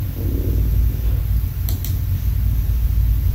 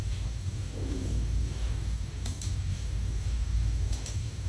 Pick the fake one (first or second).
second